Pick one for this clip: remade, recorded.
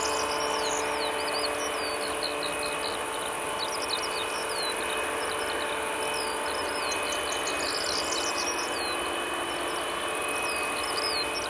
recorded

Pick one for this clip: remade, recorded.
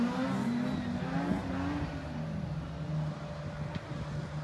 recorded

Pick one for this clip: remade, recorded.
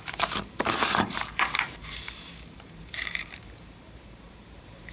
remade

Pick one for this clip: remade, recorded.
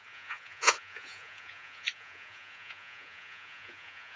remade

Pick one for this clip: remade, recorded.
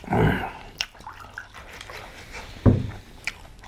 remade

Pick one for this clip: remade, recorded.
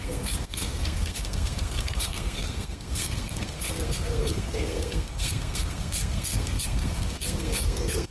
remade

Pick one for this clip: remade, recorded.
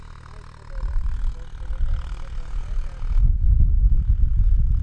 recorded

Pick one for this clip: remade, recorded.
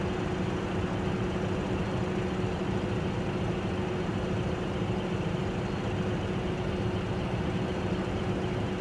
recorded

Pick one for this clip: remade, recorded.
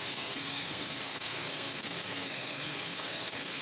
remade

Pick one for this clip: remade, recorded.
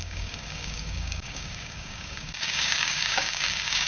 remade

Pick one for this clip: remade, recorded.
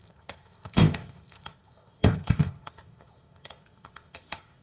remade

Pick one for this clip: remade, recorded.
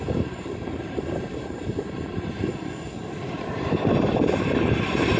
remade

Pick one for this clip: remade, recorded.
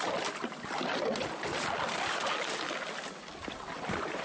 recorded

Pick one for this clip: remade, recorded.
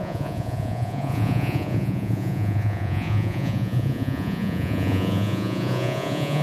remade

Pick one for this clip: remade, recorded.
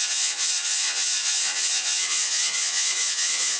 remade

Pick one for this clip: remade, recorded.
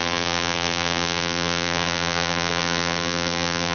remade